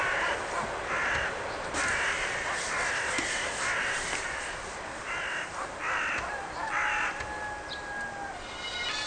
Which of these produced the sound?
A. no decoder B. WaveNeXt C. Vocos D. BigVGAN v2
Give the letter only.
A